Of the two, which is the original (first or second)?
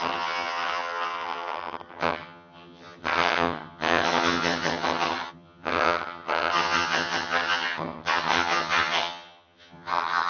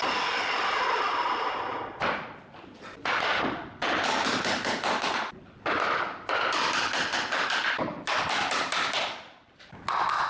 second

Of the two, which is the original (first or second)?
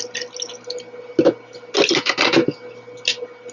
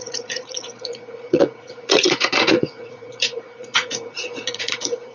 first